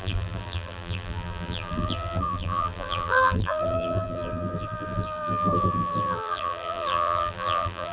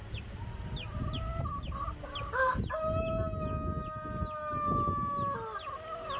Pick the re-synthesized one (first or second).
first